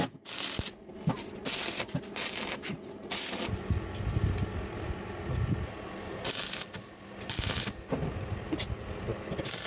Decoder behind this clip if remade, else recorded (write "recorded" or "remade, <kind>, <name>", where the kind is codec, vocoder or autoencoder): recorded